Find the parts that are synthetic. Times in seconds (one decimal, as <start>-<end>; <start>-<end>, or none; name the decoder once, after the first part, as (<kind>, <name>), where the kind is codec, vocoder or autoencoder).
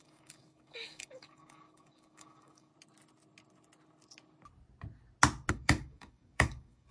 0.0-2.7 (codec, DAC); 5.5-6.9